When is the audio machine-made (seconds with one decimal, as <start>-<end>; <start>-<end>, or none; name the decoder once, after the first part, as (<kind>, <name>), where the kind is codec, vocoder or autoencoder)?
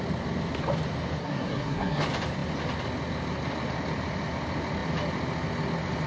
1.2-2.0 (codec, SNAC)